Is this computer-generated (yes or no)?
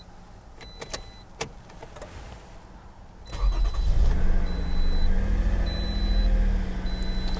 no